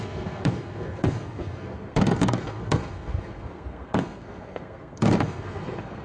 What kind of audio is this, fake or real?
fake